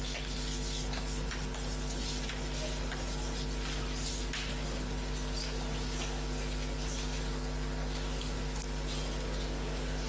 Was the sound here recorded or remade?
recorded